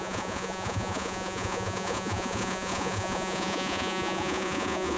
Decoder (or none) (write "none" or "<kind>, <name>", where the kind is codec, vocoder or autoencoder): vocoder, Vocos